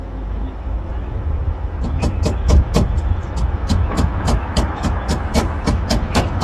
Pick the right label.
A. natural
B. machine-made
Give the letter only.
B